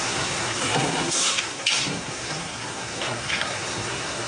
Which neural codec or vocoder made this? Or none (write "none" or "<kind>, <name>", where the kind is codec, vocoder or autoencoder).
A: codec, SNAC